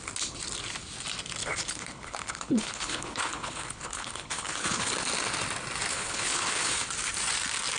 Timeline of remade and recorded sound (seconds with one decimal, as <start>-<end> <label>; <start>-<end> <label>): 0.0-1.4 recorded; 1.4-4.9 remade; 4.9-5.9 recorded; 5.9-6.9 remade; 6.9-7.8 recorded